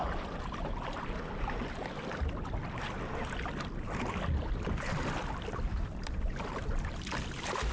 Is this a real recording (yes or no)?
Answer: yes